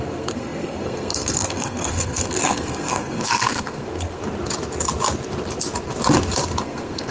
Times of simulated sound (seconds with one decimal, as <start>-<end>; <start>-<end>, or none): 0.0-4.2; 6.6-7.1